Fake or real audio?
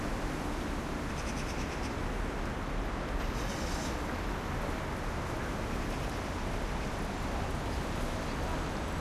real